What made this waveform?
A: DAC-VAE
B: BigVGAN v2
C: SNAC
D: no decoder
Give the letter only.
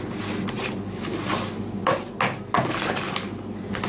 D